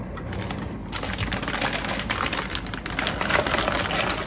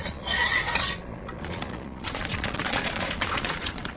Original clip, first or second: first